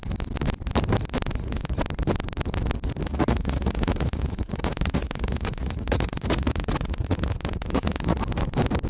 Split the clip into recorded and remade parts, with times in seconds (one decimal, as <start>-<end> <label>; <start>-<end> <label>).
0.0-1.3 recorded; 1.3-1.8 remade; 1.8-3.0 recorded; 3.0-8.2 remade; 8.2-8.9 recorded